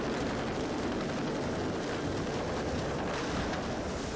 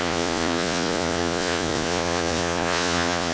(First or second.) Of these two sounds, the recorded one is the first